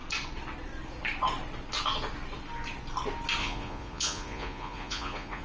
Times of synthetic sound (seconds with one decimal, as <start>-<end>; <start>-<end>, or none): 3.4-5.4